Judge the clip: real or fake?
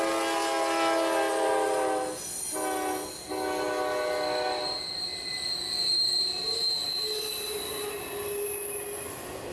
real